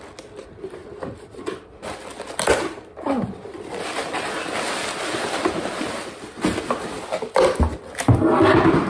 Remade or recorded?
recorded